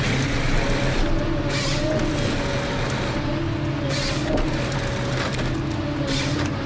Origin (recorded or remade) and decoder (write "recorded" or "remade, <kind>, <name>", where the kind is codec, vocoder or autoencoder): recorded